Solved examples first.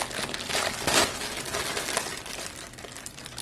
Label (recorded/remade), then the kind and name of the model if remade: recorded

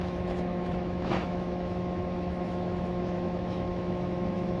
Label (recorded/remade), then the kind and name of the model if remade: remade, autoencoder, DAC-VAE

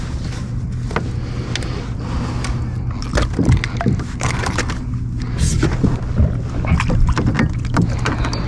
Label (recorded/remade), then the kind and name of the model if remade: recorded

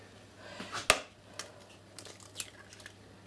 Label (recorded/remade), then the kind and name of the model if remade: recorded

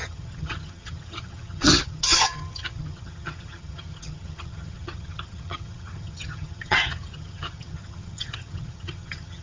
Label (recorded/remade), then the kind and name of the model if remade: remade, vocoder, HiFi-GAN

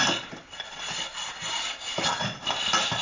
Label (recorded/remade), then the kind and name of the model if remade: recorded